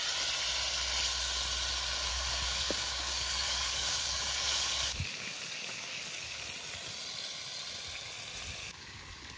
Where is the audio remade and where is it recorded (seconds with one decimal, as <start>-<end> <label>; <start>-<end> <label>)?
0.0-2.1 recorded; 2.1-6.4 remade; 6.4-8.6 recorded; 8.6-9.4 remade